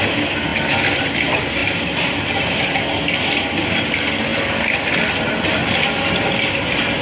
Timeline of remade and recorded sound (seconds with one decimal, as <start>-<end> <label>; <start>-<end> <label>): 0.0-7.0 recorded